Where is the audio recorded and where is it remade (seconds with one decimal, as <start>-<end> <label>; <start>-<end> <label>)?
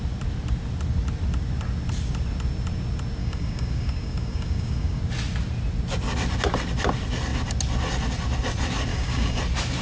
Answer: 0.0-3.2 recorded; 3.2-5.0 remade; 5.0-8.9 recorded; 8.9-9.4 remade; 9.4-9.8 recorded